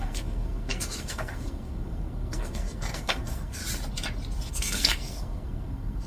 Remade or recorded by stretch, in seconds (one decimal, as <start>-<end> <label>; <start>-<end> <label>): 0.0-3.6 remade; 3.6-4.5 recorded; 4.5-6.1 remade